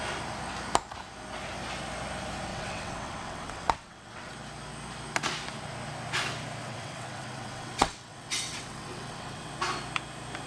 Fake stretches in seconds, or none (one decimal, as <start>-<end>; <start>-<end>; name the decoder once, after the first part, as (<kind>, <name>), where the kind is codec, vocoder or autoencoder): 2.5-4.3 (vocoder, WaveNeXt); 6.6-9.5